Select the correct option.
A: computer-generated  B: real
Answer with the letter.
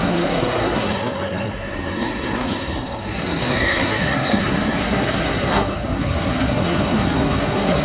A